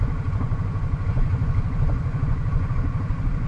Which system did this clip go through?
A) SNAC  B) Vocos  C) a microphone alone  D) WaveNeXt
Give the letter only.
B